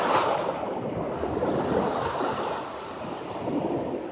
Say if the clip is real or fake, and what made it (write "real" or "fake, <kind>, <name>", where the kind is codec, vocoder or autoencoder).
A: real